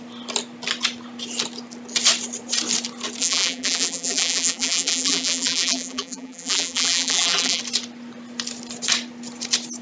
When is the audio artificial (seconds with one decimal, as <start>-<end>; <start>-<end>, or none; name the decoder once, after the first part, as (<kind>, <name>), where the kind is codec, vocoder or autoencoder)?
3.2-7.6 (vocoder, BigVGAN v2)